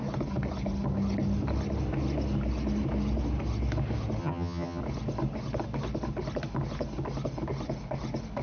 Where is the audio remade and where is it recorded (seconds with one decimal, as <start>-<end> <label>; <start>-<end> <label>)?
0.0-4.2 recorded; 4.2-4.8 remade; 4.8-8.4 recorded